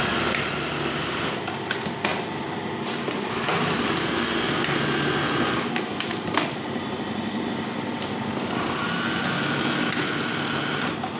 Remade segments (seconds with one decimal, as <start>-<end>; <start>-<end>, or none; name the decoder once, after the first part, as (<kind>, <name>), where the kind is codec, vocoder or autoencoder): none